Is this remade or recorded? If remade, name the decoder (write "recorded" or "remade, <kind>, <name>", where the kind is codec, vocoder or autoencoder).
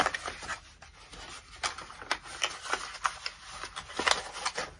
recorded